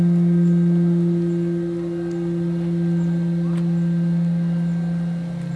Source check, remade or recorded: recorded